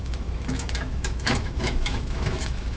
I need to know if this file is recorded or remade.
remade